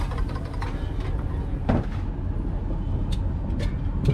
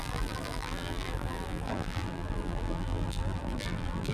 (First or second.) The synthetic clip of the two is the second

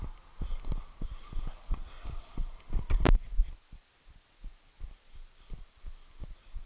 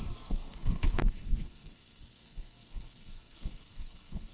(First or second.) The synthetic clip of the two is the second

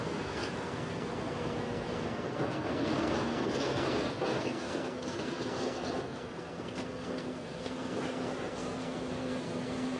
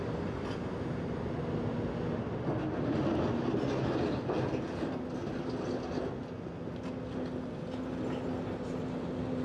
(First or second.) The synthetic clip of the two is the first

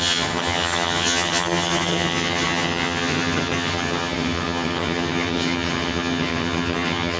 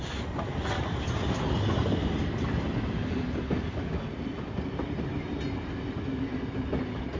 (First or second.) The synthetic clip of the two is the first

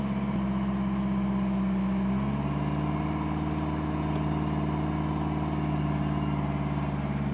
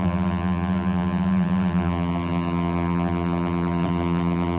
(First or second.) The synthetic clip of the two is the second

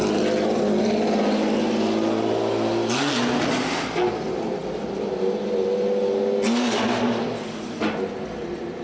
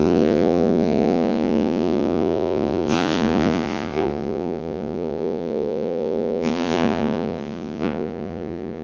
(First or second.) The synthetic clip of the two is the second